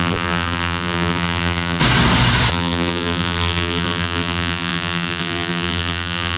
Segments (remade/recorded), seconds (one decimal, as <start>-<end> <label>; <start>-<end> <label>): 0.0-1.8 remade; 1.8-2.5 recorded; 2.5-6.4 remade